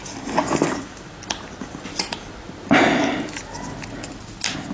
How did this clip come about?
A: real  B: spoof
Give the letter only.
A